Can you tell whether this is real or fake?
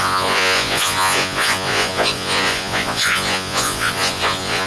fake